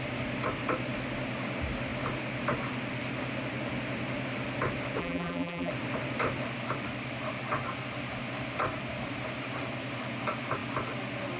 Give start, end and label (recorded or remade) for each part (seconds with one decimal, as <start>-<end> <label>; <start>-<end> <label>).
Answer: 0.0-5.0 recorded; 5.0-5.7 remade; 5.7-11.4 recorded